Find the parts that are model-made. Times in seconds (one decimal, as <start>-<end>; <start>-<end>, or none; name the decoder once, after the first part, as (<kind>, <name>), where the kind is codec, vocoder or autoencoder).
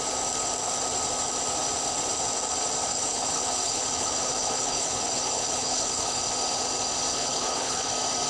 2.9-6.2 (codec, HILCodec); 7.1-7.9